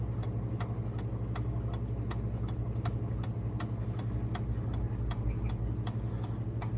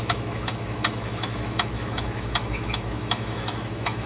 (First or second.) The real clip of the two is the first